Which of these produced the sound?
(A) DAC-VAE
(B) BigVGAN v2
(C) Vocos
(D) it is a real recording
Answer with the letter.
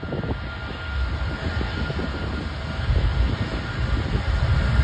D